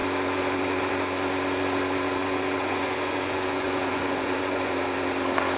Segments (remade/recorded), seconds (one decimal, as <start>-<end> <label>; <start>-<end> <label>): 0.0-2.2 recorded; 2.2-4.7 remade; 4.7-5.6 recorded